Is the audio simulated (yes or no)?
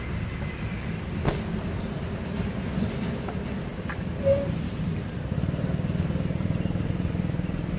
no